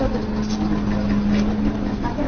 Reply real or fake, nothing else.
real